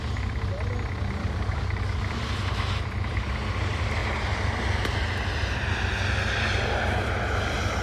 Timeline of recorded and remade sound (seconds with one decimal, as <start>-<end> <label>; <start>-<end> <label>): 0.0-1.2 recorded; 1.2-2.0 remade; 2.0-7.8 recorded